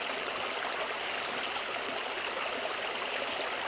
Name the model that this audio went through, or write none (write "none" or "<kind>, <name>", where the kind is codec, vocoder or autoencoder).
none